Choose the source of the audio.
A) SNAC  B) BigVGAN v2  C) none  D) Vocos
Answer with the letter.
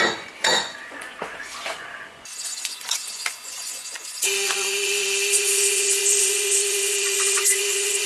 D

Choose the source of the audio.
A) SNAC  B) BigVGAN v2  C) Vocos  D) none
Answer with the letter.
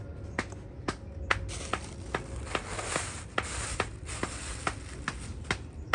D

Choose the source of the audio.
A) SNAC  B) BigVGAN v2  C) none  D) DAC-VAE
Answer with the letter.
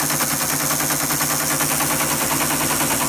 C